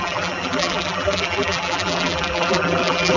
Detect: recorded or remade remade